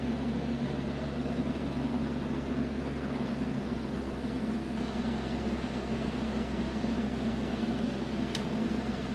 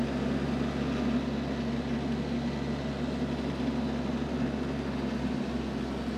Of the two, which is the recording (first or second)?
second